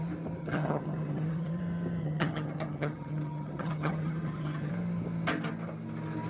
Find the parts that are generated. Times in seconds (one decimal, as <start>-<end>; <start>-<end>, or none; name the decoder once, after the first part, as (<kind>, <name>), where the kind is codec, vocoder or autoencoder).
0.4-1.6 (vocoder, HiFi-GAN); 2.0-4.7